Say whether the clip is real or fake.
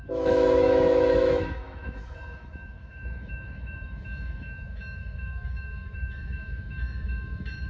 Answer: fake